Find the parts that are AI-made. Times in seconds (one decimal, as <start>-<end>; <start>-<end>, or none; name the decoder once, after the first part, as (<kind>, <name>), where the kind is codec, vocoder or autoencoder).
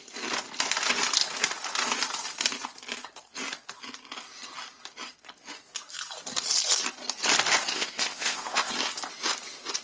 7.7-8.7 (codec, ZipCodec)